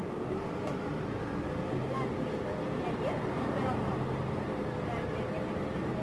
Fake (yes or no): no